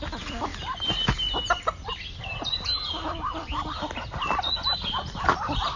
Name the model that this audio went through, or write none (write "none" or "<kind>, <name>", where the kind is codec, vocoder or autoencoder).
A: none